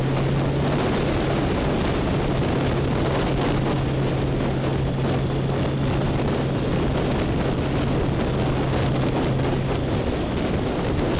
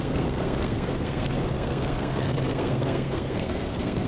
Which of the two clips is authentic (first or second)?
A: first